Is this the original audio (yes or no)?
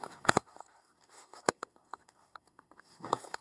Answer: no